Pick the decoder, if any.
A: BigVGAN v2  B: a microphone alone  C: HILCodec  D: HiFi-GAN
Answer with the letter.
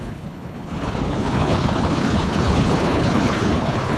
C